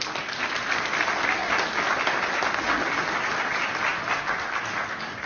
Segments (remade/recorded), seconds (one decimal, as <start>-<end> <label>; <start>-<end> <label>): 0.0-5.3 recorded